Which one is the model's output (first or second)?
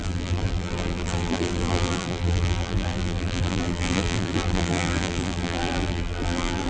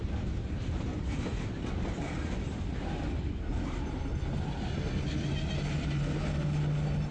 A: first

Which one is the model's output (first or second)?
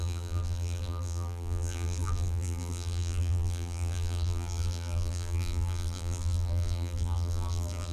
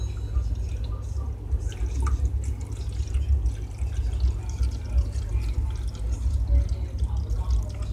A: first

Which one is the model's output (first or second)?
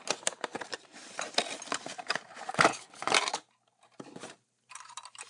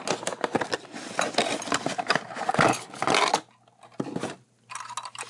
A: first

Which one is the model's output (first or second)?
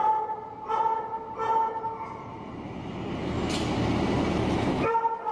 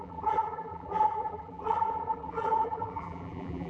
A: second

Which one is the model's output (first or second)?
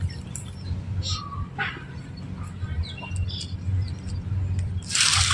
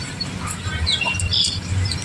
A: second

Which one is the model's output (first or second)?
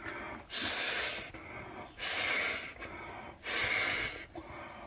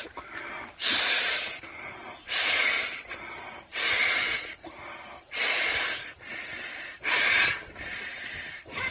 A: second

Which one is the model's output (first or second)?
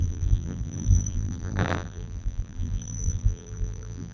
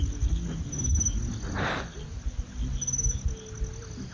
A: first